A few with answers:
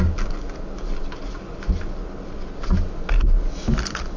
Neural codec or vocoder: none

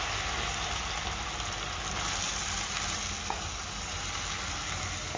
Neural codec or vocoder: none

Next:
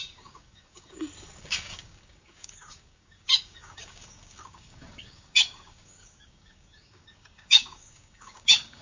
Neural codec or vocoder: codec, DAC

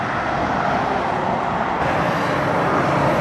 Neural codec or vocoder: none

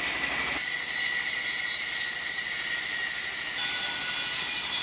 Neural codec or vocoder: none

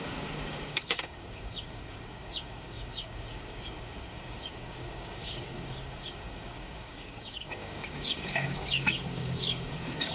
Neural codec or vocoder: codec, DAC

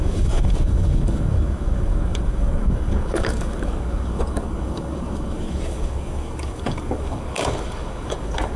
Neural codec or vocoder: codec, DAC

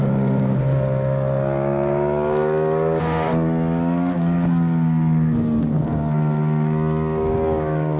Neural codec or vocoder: codec, DAC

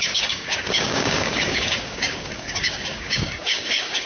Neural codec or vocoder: codec, DAC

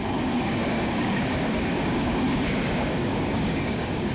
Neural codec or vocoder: codec, DAC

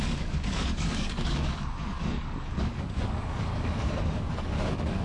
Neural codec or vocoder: codec, DAC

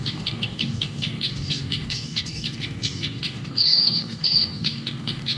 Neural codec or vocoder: codec, DAC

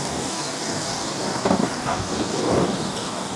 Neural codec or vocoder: codec, DAC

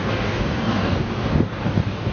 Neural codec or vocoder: codec, DAC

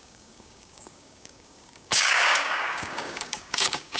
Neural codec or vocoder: codec, DAC